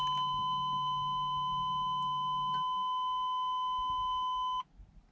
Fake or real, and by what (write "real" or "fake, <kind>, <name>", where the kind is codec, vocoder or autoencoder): real